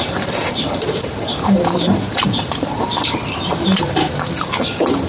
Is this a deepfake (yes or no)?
yes